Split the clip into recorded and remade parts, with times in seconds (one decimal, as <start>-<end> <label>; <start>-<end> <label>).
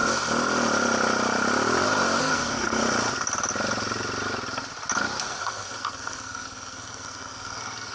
0.0-2.2 recorded; 2.2-2.8 remade; 2.8-5.2 recorded; 5.2-7.9 remade